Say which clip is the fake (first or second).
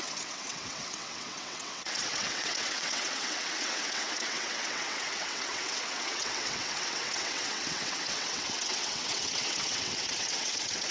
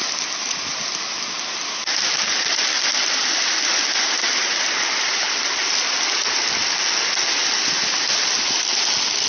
first